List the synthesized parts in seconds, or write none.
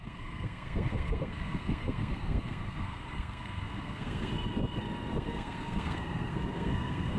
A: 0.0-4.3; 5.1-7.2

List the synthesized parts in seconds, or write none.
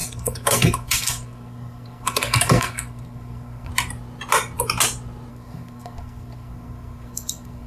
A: 0.0-3.7; 5.3-7.7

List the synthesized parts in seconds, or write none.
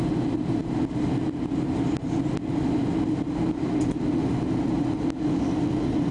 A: none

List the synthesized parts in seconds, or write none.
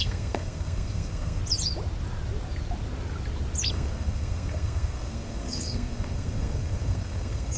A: 0.0-1.4; 3.7-7.6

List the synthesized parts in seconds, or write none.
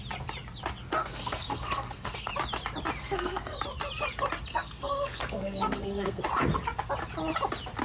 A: 1.0-2.3; 3.0-3.6; 4.5-6.2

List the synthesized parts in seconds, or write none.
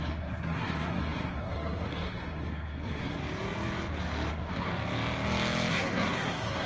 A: 0.0-3.2; 4.3-4.7; 5.7-6.7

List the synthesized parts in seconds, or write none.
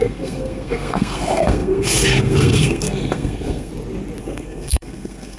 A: 0.0-3.7; 4.2-5.4